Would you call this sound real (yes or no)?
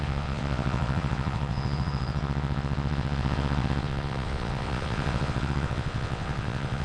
no